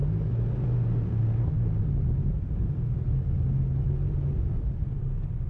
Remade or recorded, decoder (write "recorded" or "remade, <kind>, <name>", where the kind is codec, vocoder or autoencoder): recorded